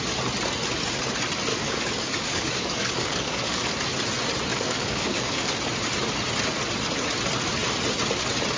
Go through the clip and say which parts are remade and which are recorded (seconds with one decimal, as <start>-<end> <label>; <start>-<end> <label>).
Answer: 0.0-1.5 recorded; 1.5-3.7 remade; 3.7-4.5 recorded; 4.5-5.5 remade; 5.5-8.6 recorded